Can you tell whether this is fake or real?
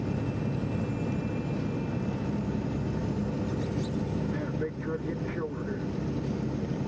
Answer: real